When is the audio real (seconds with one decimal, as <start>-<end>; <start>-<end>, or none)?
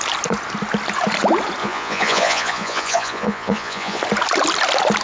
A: 0.0-1.6; 4.0-5.0